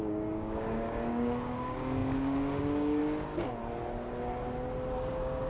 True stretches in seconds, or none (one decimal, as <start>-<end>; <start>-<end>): 3.0-5.1